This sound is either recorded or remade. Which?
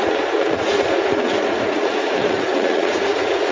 remade